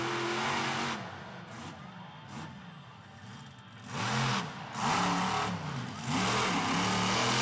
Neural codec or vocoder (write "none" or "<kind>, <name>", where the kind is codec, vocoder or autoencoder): none